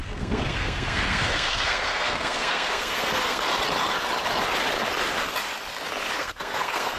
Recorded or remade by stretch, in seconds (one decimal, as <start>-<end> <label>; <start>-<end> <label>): 0.0-3.5 remade; 3.5-6.2 recorded; 6.2-7.0 remade